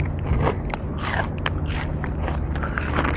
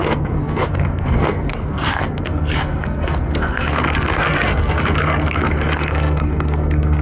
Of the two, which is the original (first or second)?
first